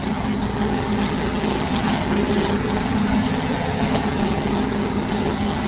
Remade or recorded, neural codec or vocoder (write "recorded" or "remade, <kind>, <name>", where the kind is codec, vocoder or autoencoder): remade, vocoder, HiFi-GAN